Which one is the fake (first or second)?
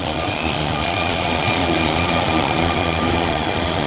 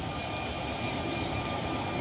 first